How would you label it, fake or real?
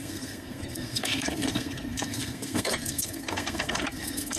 fake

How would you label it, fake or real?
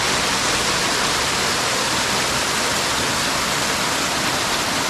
real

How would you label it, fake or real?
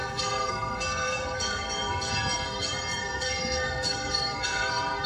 fake